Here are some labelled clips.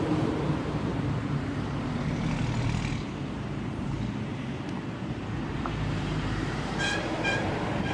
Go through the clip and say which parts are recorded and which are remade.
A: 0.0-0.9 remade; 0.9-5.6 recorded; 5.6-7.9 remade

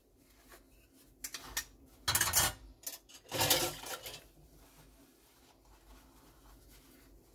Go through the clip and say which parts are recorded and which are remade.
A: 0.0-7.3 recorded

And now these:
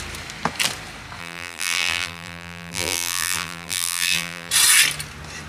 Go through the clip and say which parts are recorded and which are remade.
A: 0.0-1.2 recorded; 1.2-4.5 remade; 4.5-5.5 recorded